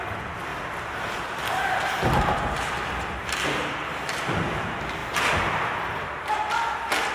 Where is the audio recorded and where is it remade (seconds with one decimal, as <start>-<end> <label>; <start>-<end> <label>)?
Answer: 0.0-0.5 recorded; 0.5-2.6 remade; 2.6-5.0 recorded; 5.0-6.3 remade; 6.3-7.1 recorded